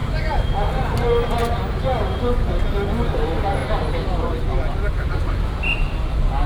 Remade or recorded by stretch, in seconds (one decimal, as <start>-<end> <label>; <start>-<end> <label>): 0.0-6.5 recorded